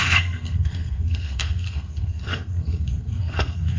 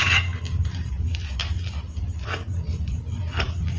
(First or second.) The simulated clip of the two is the first